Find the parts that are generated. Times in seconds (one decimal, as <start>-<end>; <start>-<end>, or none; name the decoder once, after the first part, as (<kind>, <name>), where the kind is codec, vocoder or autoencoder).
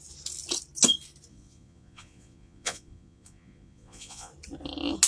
1.3-4.3 (vocoder, Vocos)